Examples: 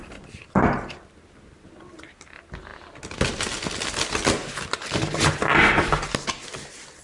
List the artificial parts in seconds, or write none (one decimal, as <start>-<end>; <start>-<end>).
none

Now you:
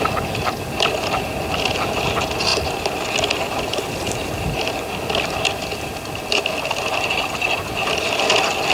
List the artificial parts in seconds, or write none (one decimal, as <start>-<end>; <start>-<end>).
none

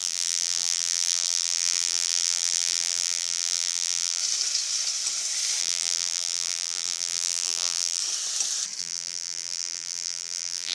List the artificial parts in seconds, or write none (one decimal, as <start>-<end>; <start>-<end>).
0.0-4.2; 5.6-8.0; 8.8-10.7